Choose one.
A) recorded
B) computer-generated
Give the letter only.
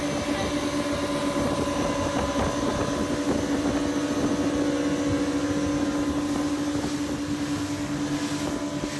A